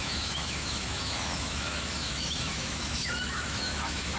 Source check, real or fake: fake